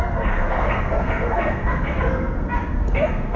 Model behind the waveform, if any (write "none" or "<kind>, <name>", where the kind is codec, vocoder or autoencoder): codec, SNAC